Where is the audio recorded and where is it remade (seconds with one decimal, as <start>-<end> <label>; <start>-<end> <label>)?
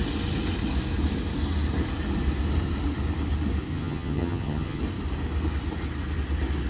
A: 0.0-3.7 recorded; 3.7-4.8 remade; 4.8-6.7 recorded